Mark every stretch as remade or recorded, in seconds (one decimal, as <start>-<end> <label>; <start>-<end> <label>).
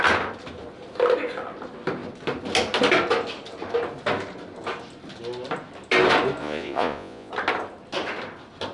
0.0-6.4 recorded; 6.4-7.3 remade; 7.3-8.7 recorded